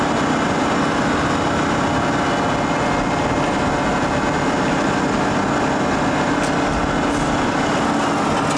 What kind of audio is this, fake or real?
real